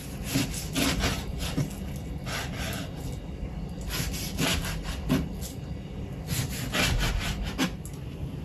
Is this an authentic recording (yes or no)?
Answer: yes